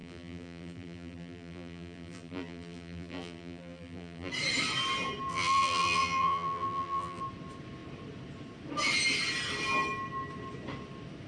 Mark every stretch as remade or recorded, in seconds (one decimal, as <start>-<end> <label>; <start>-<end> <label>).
0.0-4.3 remade; 4.3-5.3 recorded; 5.3-7.2 remade; 7.2-11.3 recorded